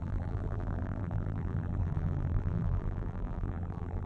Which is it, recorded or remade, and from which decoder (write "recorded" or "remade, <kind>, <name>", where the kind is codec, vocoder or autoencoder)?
remade, vocoder, BigVGAN v2